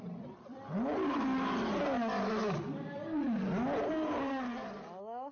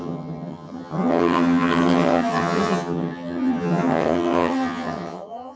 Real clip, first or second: first